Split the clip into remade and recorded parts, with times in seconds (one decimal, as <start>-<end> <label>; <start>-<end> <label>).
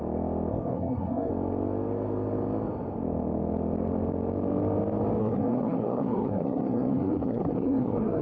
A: 0.0-0.5 recorded; 0.5-1.3 remade; 1.3-5.2 recorded; 5.2-8.2 remade